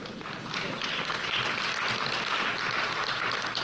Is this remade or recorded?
recorded